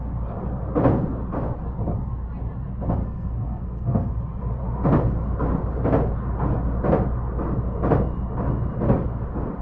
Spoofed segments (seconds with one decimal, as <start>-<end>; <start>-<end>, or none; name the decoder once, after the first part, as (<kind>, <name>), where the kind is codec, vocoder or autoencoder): 3.0-4.1 (codec, SNAC)

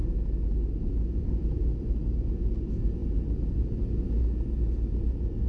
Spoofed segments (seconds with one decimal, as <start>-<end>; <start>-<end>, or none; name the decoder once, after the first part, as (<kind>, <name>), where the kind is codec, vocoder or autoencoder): none